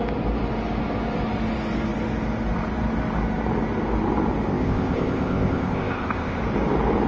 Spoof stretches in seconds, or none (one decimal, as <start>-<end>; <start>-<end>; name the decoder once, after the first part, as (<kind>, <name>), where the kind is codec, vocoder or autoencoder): 4.5-6.4 (codec, ZipCodec)